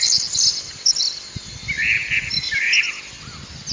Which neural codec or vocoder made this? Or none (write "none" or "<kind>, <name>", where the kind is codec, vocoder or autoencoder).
none